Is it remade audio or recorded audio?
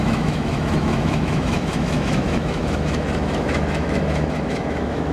remade